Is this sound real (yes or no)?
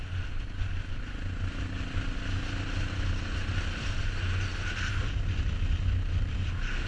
yes